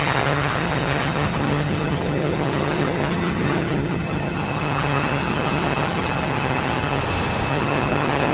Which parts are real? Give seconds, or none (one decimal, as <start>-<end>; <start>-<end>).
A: 7.0-7.5